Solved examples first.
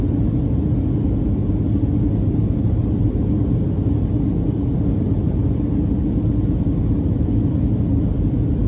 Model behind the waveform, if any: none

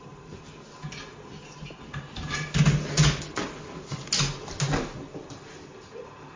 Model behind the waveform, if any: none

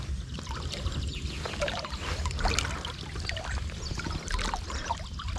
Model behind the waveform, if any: none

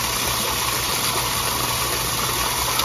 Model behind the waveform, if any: none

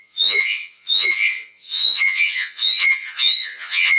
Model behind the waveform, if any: vocoder, Vocos